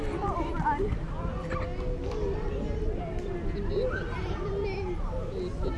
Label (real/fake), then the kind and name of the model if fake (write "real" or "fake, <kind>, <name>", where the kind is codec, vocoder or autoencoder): real